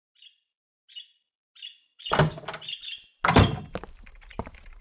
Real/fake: real